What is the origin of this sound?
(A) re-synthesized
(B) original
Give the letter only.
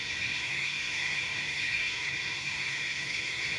A